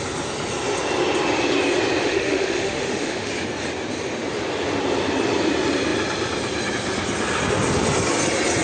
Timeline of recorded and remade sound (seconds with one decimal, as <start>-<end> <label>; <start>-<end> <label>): 0.0-2.0 recorded; 2.0-3.3 remade; 3.3-8.6 recorded